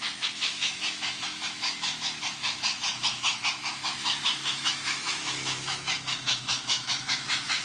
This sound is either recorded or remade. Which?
remade